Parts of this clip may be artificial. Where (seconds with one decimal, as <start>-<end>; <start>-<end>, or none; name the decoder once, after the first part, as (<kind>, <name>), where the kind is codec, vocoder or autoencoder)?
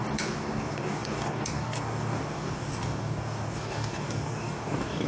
0.0-5.1 (codec, DAC)